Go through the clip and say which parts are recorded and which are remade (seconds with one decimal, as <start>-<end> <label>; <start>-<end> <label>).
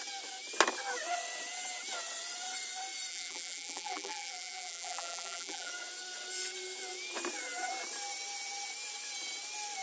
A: 0.0-3.1 recorded; 3.1-5.7 remade; 5.7-9.8 recorded